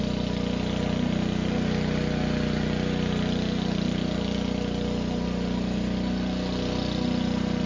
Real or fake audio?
real